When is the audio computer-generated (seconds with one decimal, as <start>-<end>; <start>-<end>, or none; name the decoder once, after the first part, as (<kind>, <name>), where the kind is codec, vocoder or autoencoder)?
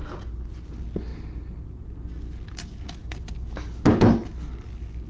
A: none